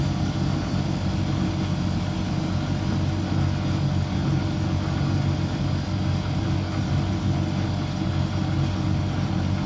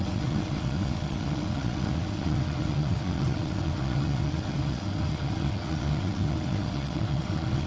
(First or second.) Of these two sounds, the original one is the first